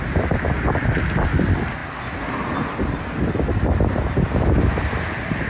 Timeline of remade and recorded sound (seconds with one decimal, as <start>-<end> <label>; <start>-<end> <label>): 0.0-5.5 recorded